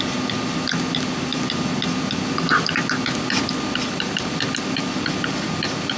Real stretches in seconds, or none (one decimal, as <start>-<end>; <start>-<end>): 0.0-6.0